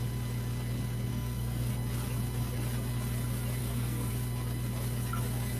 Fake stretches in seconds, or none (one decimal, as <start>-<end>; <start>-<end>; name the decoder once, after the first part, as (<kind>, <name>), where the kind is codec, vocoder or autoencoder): 1.1-1.7 (codec, SNAC); 3.6-4.1